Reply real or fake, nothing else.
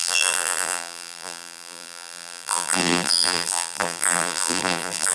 fake